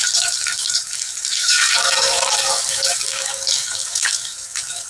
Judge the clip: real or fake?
fake